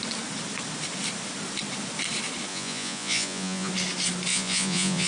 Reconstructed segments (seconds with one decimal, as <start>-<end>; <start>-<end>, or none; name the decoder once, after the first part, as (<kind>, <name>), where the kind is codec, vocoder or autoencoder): 2.5-3.7 (vocoder, Vocos); 4.3-5.1